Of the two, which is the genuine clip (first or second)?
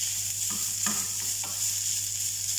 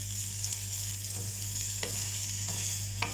first